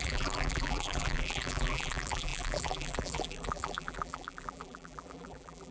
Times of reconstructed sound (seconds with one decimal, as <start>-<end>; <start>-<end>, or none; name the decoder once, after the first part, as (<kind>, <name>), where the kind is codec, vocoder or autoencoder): 0.0-5.7 (vocoder, BigVGAN v2)